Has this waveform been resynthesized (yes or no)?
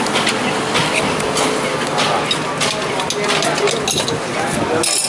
no